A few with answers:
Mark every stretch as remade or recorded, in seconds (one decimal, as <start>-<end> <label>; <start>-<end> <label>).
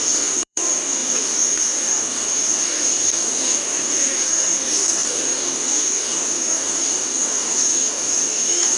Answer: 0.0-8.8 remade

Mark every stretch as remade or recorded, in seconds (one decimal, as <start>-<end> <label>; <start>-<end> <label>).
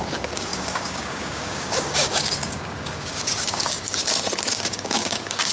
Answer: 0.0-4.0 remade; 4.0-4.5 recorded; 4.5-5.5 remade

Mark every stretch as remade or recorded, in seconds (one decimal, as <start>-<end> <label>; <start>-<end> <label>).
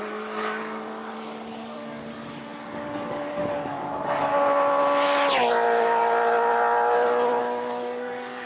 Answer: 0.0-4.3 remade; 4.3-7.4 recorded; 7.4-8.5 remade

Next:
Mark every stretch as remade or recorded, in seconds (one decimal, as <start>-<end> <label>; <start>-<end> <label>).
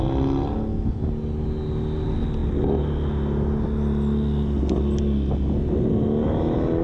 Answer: 0.0-6.8 recorded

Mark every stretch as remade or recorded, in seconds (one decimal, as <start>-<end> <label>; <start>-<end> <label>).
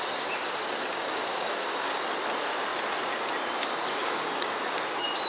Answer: 0.0-0.9 recorded; 0.9-2.0 remade; 2.0-4.0 recorded; 4.0-4.8 remade; 4.8-5.3 recorded